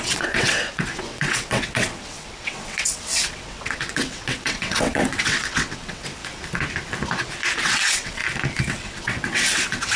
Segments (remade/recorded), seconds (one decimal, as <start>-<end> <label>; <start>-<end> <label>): 0.0-6.2 remade; 6.2-7.6 recorded; 7.6-8.2 remade; 8.2-8.7 recorded; 8.7-10.0 remade